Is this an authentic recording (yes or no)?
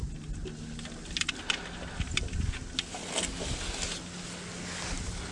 yes